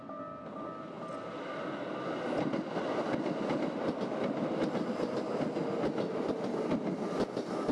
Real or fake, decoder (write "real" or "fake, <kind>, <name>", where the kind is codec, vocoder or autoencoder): real